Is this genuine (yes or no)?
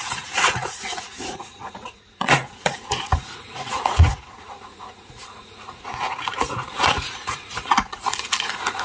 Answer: no